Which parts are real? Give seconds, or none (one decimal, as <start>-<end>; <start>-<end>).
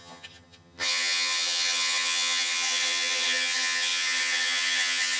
none